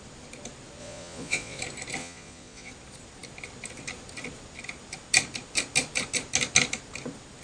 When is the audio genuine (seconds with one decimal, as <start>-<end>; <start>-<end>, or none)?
0.0-0.8; 1.6-2.0; 2.7-7.4